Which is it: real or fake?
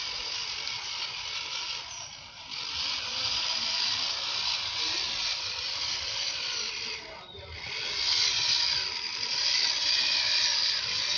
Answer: real